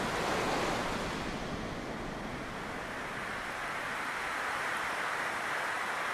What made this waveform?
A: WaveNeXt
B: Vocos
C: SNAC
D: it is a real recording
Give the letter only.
D